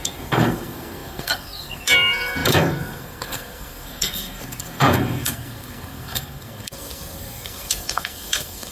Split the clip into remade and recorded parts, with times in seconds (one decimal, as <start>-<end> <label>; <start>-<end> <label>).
0.0-8.7 remade